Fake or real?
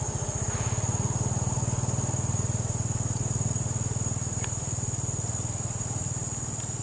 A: real